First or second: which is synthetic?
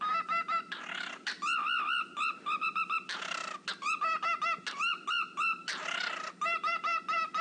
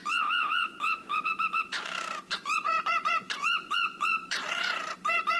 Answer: second